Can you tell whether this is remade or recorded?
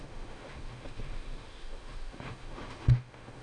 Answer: remade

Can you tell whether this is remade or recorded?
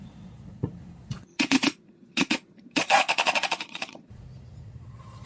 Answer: remade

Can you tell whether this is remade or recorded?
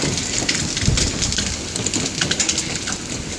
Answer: recorded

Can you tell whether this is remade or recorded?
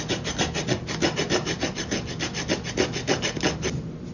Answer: recorded